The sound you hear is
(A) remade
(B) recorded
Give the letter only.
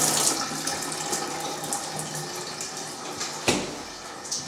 B